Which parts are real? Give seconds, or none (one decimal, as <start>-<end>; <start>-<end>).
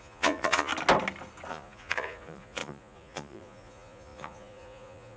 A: 0.7-1.5